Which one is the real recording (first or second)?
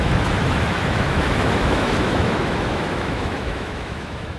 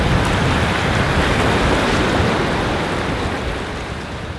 second